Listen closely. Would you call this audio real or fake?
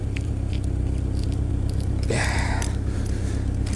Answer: real